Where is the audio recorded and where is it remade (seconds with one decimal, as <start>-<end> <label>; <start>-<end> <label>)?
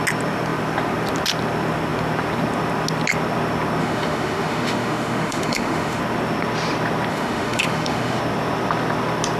0.0-3.8 recorded; 3.8-6.0 remade; 6.0-7.1 recorded; 7.1-8.2 remade; 8.2-9.4 recorded